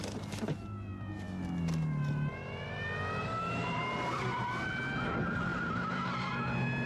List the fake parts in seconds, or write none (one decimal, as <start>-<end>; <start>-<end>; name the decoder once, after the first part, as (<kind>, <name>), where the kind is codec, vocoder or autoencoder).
3.2-3.8 (vocoder, BigVGAN v2); 5.5-6.3